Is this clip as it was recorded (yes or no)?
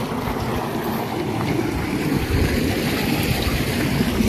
yes